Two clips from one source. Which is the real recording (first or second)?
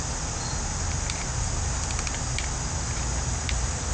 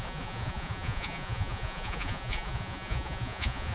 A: first